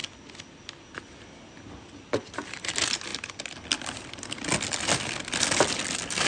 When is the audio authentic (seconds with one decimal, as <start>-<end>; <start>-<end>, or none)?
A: 0.0-6.3